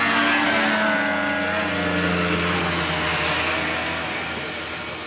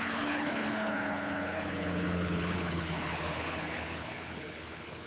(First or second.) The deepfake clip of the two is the second